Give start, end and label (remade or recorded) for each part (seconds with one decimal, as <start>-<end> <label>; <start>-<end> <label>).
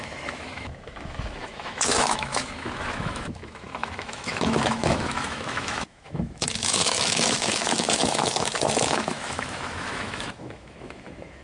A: 0.0-11.4 remade